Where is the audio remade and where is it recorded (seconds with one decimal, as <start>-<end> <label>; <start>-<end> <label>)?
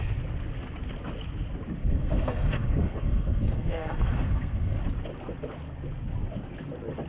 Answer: 0.0-1.8 recorded; 1.8-4.8 remade; 4.8-7.1 recorded